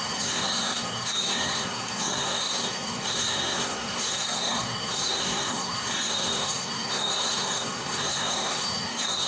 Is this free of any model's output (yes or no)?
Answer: no